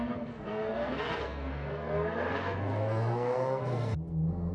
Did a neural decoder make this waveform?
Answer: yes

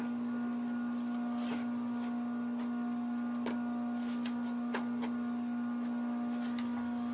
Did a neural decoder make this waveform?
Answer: no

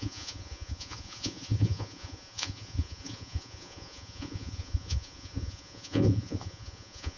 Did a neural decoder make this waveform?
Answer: yes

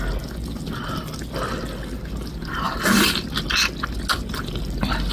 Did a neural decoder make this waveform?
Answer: no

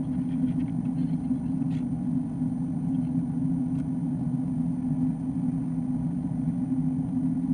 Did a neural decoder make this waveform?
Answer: no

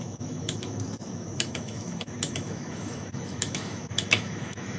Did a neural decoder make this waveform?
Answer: yes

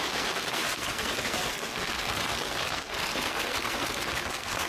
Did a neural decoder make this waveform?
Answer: yes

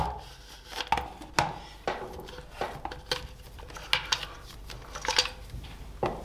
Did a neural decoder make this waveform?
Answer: no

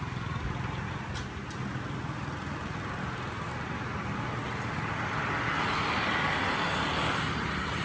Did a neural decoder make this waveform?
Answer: no